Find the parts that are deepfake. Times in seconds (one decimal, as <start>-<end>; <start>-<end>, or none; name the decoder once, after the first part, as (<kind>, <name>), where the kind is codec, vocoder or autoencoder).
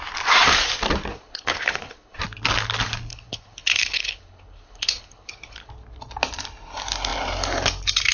1.1-2.2 (codec, HILCodec); 3.1-5.7